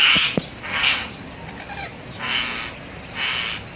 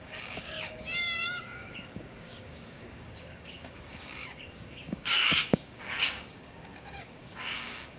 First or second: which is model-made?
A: second